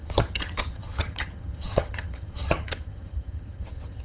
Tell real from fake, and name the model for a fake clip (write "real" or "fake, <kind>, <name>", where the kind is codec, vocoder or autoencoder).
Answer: fake, vocoder, HiFi-GAN